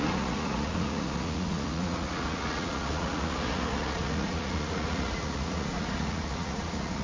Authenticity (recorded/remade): remade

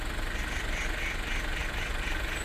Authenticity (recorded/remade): recorded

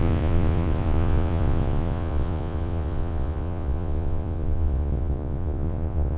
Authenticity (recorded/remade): remade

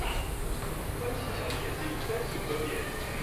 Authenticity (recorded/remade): recorded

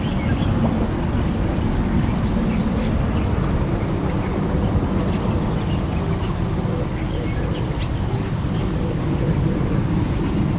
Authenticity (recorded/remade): recorded